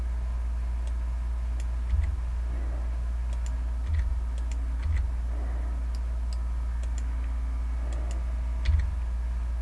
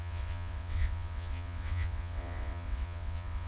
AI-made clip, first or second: second